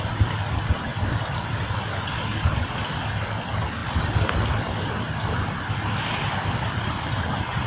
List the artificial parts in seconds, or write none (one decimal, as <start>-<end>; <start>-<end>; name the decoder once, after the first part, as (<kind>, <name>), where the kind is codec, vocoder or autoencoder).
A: 3.8-7.7 (vocoder, BigVGAN v2)

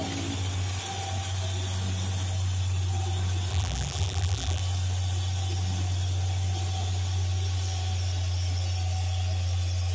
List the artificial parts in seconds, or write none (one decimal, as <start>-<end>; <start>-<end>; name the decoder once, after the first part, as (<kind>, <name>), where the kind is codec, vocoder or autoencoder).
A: 3.5-4.6 (vocoder, BigVGAN v2)